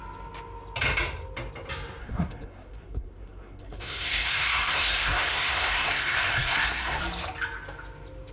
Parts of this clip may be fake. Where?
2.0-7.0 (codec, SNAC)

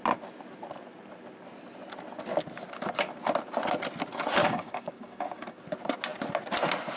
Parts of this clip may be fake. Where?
4.4-5.6 (codec, DAC)

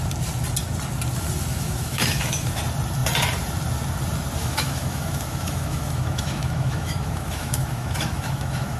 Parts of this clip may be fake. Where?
1.5-2.6 (autoencoder, DAC-VAE); 4.4-8.8